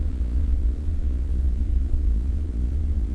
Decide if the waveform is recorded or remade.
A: remade